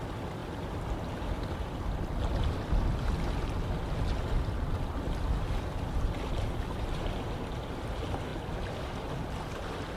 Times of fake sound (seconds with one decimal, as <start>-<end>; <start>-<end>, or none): none